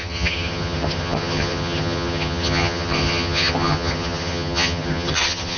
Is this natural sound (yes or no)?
no